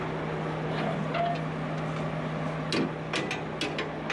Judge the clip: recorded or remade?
recorded